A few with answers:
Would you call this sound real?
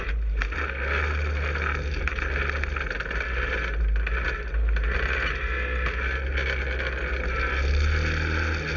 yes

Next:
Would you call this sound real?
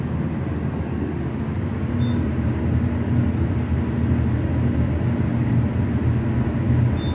yes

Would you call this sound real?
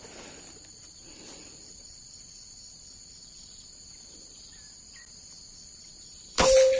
no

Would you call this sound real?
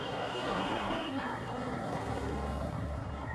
no